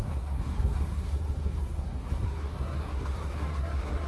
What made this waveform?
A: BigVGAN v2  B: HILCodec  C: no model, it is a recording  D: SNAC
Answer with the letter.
D